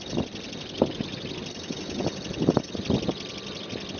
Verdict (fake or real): real